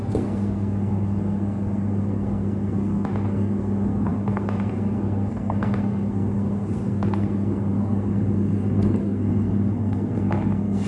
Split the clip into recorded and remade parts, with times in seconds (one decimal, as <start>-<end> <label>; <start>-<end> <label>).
0.0-10.9 remade